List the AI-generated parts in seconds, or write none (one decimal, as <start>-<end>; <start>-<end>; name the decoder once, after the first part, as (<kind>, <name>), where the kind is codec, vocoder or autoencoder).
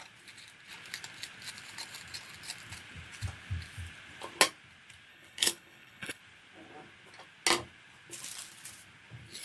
5.1-6.2 (codec, HILCodec)